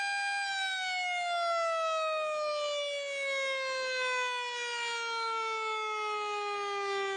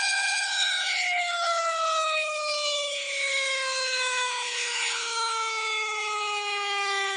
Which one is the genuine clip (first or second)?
first